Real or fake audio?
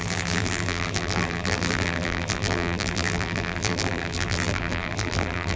fake